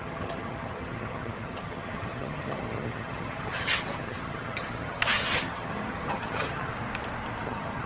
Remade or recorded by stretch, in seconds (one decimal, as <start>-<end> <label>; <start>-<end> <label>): 0.0-6.7 remade; 6.7-7.4 recorded; 7.4-7.9 remade